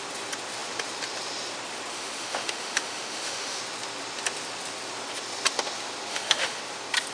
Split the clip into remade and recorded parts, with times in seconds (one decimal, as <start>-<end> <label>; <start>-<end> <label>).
0.0-1.9 recorded; 1.9-3.6 remade; 3.6-6.1 recorded; 6.1-6.6 remade; 6.6-7.1 recorded